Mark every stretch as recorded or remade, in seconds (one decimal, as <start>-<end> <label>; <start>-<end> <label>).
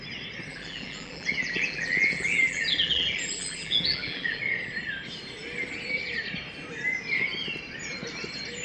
0.0-0.5 recorded; 0.5-4.4 remade; 4.4-8.6 recorded